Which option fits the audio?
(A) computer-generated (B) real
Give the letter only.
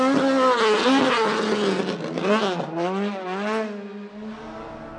B